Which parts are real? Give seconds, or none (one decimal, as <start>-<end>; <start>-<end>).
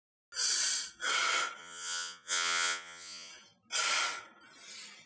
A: 0.0-1.6; 3.3-5.1